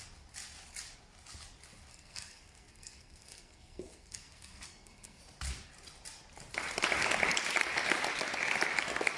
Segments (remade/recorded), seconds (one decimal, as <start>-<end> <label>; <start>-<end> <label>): 0.0-1.9 recorded; 1.9-5.2 remade; 5.2-9.2 recorded